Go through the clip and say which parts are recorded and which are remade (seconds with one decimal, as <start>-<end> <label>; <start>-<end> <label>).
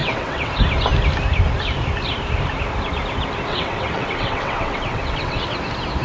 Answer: 0.0-0.5 remade; 0.5-3.5 recorded; 3.5-5.6 remade; 5.6-6.0 recorded